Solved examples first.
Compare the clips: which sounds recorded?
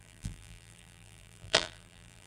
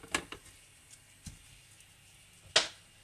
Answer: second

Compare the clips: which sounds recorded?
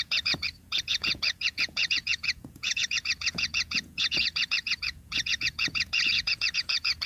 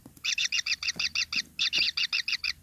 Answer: second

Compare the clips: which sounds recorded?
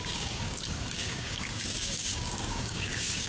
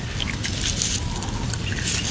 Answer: second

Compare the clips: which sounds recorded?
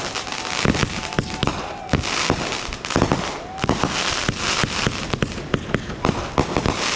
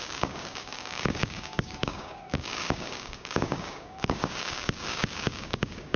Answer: first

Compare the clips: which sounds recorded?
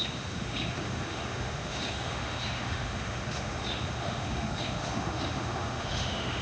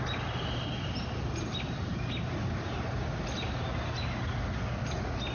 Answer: second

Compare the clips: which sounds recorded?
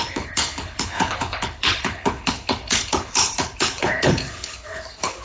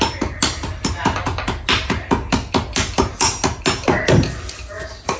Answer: second